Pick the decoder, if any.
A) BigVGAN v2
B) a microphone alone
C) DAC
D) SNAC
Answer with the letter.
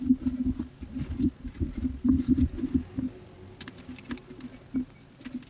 B